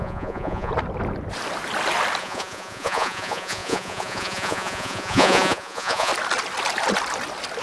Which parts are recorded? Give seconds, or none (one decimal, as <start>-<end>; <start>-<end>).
0.7-2.2; 6.1-7.6